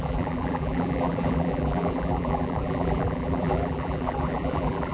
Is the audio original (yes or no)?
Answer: no